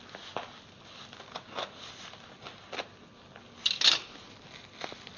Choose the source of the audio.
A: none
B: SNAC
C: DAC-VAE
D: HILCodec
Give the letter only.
A